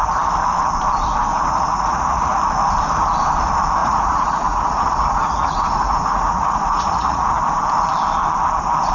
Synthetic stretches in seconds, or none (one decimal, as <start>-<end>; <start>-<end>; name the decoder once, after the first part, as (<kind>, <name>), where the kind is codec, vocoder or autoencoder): 1.3-2.4 (vocoder, Vocos); 3.8-7.3